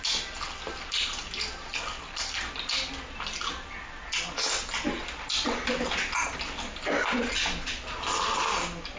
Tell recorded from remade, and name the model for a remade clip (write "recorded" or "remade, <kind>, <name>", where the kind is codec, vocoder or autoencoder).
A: recorded